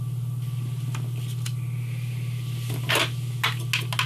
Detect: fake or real real